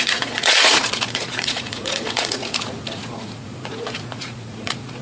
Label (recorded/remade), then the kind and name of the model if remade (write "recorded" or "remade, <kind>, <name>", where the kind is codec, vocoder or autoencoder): remade, vocoder, Vocos